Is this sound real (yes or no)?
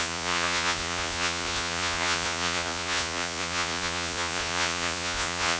no